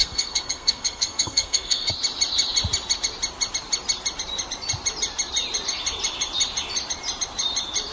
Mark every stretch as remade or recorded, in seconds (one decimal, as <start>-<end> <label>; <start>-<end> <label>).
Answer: 0.0-1.9 remade; 1.9-7.9 recorded